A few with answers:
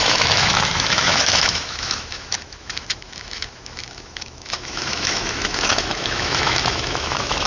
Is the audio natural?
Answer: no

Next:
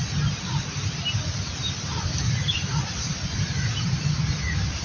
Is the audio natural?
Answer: yes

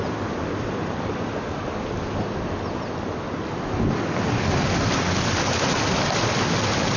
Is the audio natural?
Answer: yes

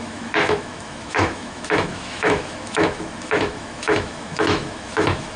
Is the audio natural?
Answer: no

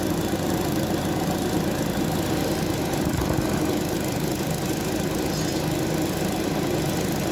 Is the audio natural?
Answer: yes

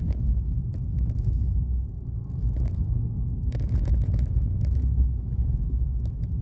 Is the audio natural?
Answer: no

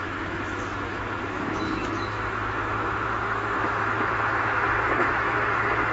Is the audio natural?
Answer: no